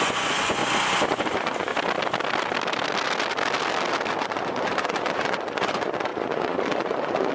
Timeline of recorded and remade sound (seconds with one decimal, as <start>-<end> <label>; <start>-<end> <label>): 0.0-0.6 remade; 0.6-1.1 recorded; 1.1-1.7 remade; 1.7-4.2 recorded; 4.2-7.3 remade